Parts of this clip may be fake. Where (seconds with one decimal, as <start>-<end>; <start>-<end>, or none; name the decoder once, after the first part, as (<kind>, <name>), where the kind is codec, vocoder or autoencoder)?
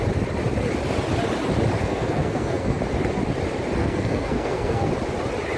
1.8-2.8 (codec, SNAC); 3.8-4.9